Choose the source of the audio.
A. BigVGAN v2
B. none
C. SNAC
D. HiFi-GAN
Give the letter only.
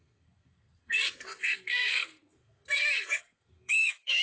C